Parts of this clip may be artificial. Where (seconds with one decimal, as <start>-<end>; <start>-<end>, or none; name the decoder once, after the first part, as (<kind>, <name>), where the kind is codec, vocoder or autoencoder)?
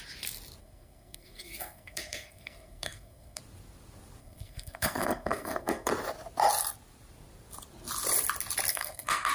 0.6-3.4 (codec, SNAC); 4.2-5.9; 8.7-9.3